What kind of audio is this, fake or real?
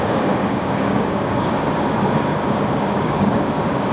fake